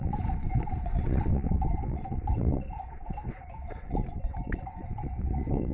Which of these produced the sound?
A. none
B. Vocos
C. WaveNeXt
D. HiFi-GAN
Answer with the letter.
C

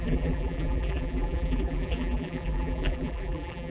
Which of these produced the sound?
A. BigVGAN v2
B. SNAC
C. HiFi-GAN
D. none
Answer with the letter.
A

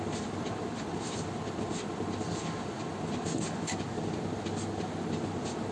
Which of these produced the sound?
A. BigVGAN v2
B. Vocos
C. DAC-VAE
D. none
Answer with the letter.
D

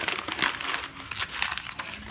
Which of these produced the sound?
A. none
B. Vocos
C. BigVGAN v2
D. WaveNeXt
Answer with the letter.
A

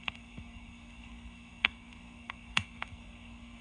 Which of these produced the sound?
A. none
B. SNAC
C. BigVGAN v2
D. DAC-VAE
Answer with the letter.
B